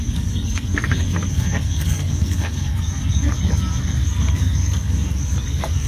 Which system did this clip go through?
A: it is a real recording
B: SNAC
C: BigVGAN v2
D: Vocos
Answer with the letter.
B